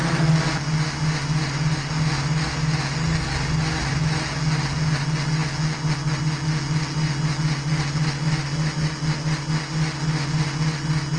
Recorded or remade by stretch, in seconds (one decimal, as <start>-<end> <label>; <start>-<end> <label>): 0.0-11.2 recorded